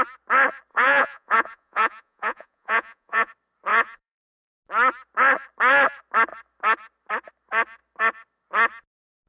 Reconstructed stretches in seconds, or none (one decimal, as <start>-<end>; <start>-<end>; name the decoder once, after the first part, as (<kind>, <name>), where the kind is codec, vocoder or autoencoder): 0.7-3.3 (vocoder, Vocos); 3.7-4.5

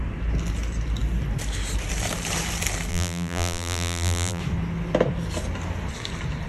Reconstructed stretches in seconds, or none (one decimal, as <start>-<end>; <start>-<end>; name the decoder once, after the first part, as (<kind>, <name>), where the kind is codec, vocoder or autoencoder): 2.9-4.4 (vocoder, BigVGAN v2)